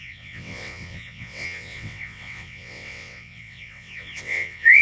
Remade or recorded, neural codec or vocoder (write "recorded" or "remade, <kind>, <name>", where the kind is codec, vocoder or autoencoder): remade, vocoder, WaveNeXt